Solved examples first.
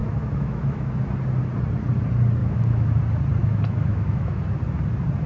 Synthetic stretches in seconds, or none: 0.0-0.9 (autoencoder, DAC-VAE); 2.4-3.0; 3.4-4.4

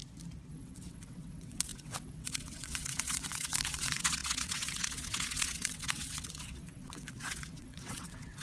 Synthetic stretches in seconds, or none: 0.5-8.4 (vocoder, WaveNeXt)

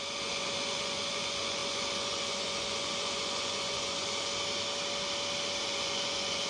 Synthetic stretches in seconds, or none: 0.0-4.3 (vocoder, Vocos); 5.6-6.5

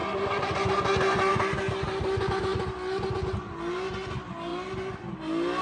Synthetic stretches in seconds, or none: none

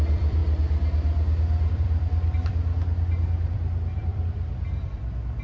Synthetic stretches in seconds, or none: 0.0-0.4 (vocoder, BigVGAN v2); 1.7-5.4

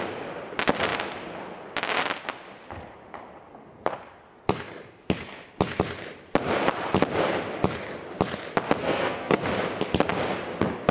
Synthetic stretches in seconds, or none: 8.8-9.4 (codec, SNAC)